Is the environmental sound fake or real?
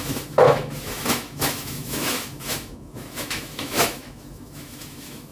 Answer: fake